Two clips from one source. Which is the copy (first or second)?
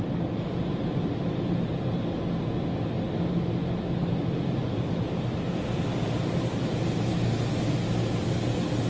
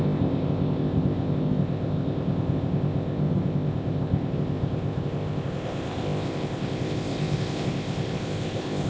second